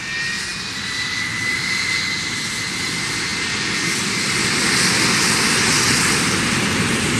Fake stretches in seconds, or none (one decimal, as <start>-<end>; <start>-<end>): none